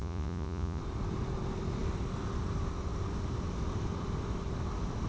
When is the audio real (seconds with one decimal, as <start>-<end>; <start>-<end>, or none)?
0.8-5.1